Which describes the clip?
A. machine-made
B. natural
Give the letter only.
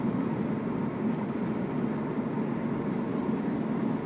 B